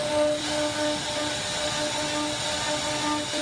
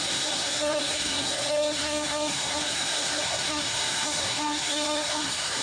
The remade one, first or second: second